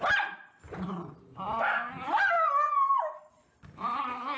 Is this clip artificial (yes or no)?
no